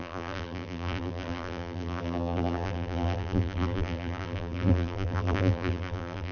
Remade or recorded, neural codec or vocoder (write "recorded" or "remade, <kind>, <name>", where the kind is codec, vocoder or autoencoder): remade, vocoder, BigVGAN v2